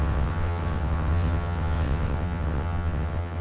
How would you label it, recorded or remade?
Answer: remade